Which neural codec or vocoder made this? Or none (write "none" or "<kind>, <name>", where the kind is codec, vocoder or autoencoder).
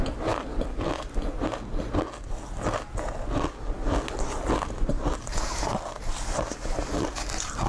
none